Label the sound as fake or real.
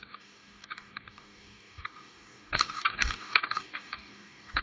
fake